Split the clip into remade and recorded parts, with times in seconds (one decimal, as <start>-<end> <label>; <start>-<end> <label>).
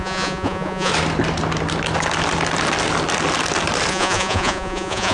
0.0-0.9 remade; 0.9-3.9 recorded; 3.9-5.1 remade